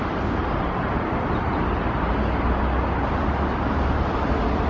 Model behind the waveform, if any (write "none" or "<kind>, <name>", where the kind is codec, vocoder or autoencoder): none